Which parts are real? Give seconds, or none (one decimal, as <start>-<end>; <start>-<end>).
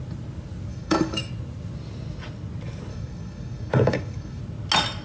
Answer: 0.0-0.7; 1.3-2.9; 4.4-5.0